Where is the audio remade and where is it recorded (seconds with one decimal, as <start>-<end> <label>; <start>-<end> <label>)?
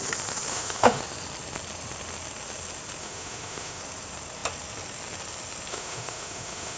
0.0-0.5 recorded; 0.5-1.0 remade; 1.0-3.0 recorded; 3.0-3.8 remade; 3.8-5.7 recorded; 5.7-6.8 remade